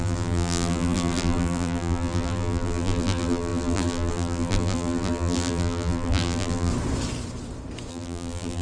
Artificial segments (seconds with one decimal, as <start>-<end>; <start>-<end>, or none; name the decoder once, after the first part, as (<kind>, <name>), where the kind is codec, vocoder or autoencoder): 0.0-6.7 (vocoder, BigVGAN v2); 7.9-8.6

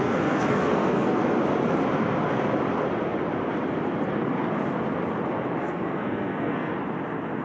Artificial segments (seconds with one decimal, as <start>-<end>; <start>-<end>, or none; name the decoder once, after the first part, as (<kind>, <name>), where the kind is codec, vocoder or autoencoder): 0.0-1.2 (codec, SNAC); 5.6-6.7